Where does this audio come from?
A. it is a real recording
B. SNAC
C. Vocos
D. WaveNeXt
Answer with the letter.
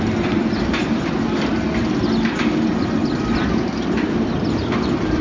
A